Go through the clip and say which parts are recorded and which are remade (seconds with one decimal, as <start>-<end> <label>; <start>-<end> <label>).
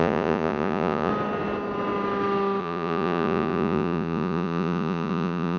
0.0-1.1 remade; 1.1-2.6 recorded; 2.6-5.6 remade